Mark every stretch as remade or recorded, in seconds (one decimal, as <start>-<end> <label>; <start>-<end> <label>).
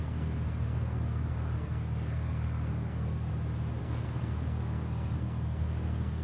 0.0-3.3 remade; 3.3-3.8 recorded; 3.8-6.2 remade